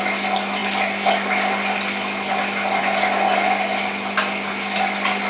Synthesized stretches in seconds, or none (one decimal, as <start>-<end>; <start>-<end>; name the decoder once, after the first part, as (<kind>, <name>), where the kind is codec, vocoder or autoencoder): none